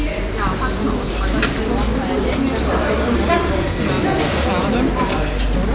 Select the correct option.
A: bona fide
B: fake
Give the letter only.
A